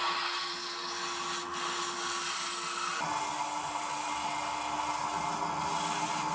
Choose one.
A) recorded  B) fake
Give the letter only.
A